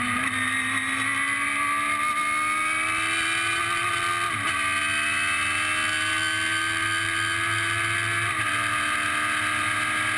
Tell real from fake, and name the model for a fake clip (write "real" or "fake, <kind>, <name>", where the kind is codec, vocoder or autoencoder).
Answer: real